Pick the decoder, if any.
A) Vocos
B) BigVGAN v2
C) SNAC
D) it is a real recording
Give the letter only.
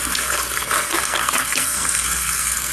C